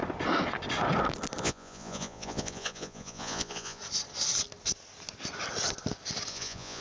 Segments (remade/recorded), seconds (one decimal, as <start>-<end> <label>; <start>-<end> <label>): 0.0-1.4 recorded; 1.4-3.8 remade; 3.8-6.3 recorded; 6.3-6.8 remade